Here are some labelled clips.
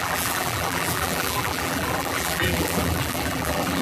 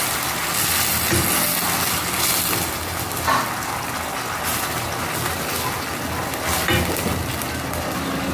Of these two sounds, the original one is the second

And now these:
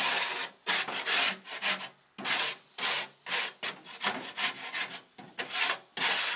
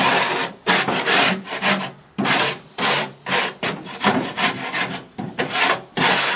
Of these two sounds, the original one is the first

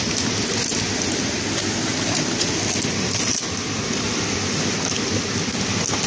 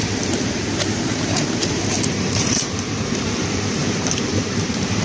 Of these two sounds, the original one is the first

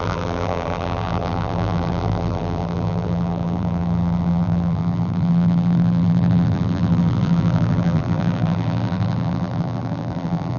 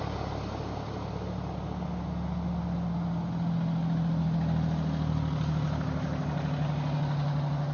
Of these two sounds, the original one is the second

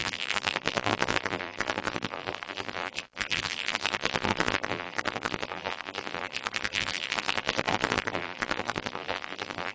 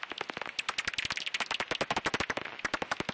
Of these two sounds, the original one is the second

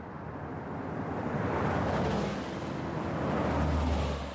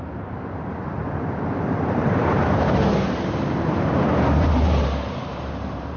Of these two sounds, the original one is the first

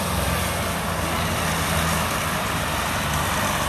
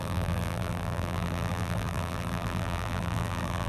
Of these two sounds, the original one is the first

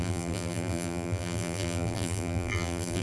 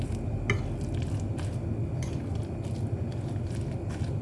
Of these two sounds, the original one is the second